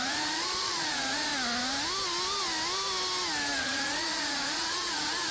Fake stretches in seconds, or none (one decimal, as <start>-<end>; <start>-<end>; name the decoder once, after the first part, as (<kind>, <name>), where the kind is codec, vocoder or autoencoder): 0.0-1.3 (vocoder, Vocos); 3.6-5.3